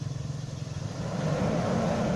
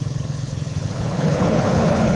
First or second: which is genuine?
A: first